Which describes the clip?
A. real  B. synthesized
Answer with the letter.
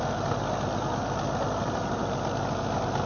A